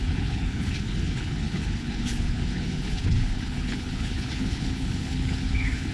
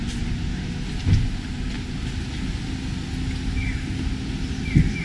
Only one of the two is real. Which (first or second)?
second